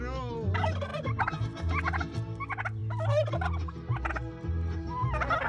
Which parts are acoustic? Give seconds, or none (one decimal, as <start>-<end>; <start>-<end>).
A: 0.0-5.5